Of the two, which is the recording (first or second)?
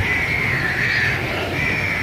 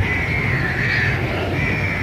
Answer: second